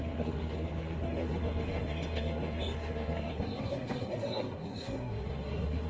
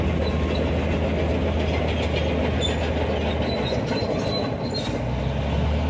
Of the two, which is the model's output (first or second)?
first